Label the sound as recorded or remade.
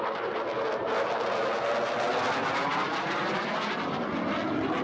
recorded